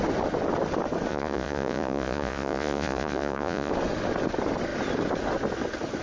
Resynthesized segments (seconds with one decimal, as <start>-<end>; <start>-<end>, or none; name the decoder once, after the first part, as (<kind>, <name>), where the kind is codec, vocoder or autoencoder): 1.1-3.7 (vocoder, Vocos)